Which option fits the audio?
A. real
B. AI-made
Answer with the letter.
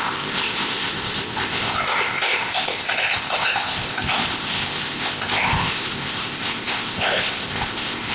B